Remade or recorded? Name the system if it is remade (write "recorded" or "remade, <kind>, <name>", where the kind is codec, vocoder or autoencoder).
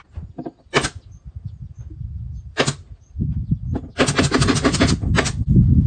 recorded